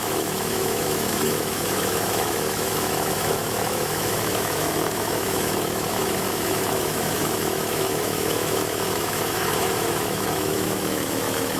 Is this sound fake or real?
fake